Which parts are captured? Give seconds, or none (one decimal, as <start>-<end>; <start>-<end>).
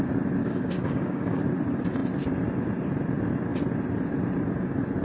0.0-0.4; 1.4-5.0